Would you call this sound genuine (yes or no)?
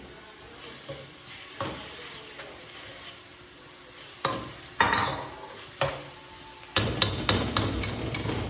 yes